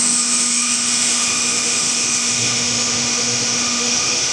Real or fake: fake